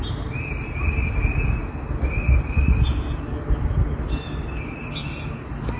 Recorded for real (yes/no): yes